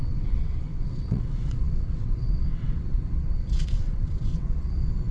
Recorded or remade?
remade